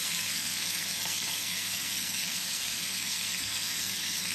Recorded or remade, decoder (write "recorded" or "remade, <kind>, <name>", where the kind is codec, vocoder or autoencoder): remade, codec, SNAC